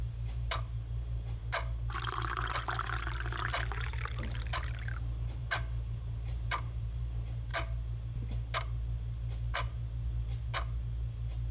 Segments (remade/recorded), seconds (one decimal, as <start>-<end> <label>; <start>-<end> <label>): 0.0-1.4 remade; 1.4-5.4 recorded; 5.4-7.5 remade; 7.5-11.5 recorded